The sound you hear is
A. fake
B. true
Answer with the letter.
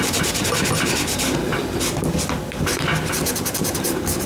B